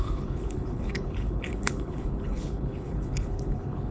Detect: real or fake fake